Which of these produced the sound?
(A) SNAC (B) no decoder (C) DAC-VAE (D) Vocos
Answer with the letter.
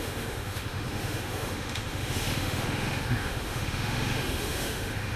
C